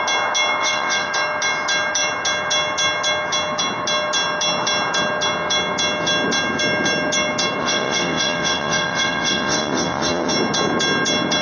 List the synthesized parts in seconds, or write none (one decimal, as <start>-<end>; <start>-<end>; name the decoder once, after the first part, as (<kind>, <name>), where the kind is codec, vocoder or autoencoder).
0.6-1.1 (vocoder, WaveNeXt); 7.6-10.3